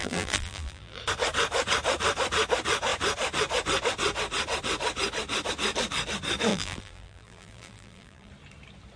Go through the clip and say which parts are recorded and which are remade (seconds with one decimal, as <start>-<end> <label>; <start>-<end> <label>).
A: 0.0-1.0 remade; 1.0-6.5 recorded; 6.5-8.3 remade; 8.3-9.0 recorded